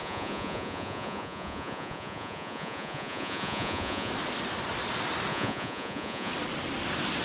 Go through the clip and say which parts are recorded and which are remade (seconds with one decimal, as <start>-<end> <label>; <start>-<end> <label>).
0.0-4.1 remade; 4.1-5.3 recorded; 5.3-6.3 remade; 6.3-7.2 recorded